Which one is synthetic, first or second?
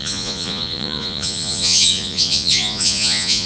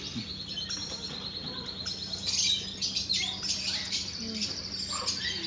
first